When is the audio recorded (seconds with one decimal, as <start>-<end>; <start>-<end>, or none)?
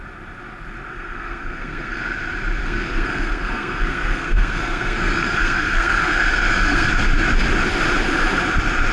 0.0-0.9; 2.0-2.6; 6.9-8.9